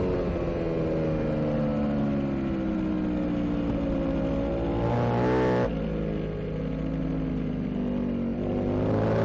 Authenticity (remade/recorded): recorded